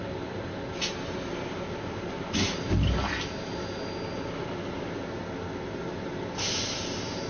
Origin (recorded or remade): recorded